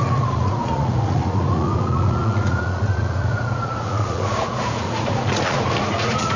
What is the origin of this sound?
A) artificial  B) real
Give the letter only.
A